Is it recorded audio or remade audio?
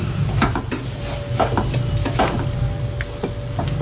recorded